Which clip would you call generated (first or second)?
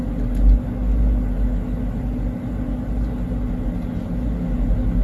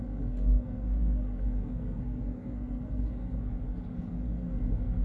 second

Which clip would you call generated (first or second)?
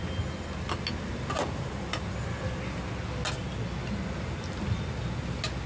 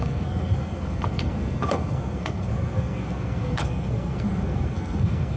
second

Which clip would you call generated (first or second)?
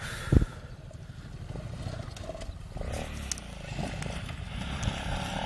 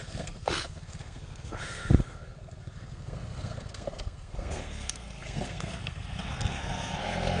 second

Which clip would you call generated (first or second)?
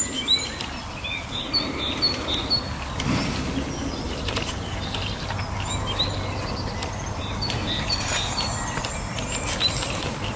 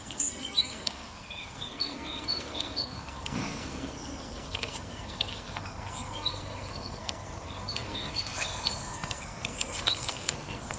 second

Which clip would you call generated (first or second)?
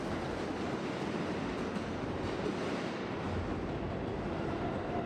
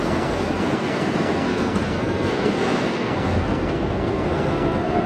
second